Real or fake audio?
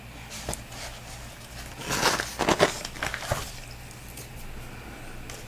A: real